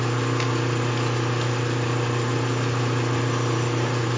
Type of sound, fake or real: real